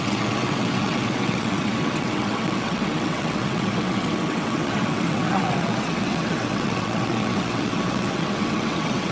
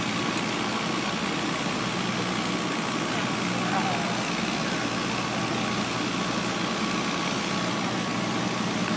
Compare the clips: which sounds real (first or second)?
second